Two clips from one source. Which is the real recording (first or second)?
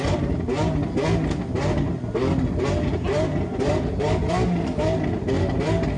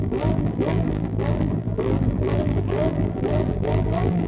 first